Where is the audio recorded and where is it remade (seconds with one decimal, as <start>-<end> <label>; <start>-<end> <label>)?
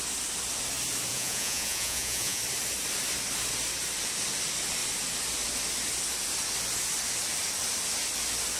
0.0-1.1 recorded; 1.1-2.4 remade; 2.4-8.6 recorded